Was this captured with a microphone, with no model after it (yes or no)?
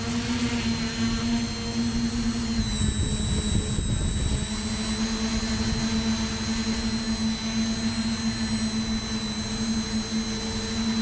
yes